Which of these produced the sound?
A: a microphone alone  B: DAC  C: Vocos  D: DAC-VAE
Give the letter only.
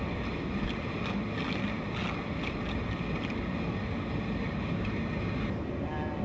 A